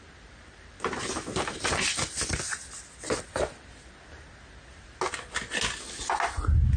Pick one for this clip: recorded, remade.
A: recorded